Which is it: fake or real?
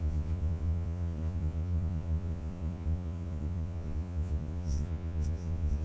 fake